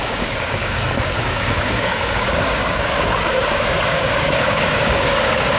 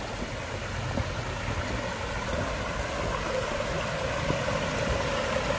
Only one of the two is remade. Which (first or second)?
first